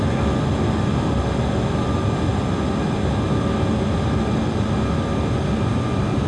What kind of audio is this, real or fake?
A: real